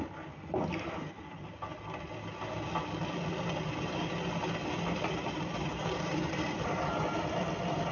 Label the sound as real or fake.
real